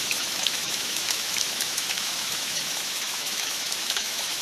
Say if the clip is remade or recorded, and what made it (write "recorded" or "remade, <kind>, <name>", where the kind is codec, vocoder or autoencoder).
remade, autoencoder, DAC-VAE